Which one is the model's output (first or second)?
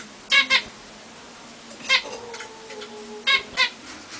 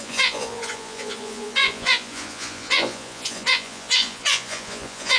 second